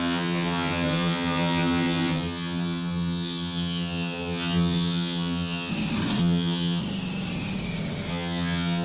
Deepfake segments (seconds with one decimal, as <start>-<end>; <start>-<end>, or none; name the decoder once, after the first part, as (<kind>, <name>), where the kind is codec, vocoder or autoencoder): 0.0-5.7 (vocoder, HiFi-GAN); 6.2-6.8; 8.1-8.8